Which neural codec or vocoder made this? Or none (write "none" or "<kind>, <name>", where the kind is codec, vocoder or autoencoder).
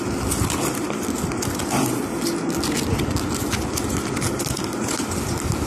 none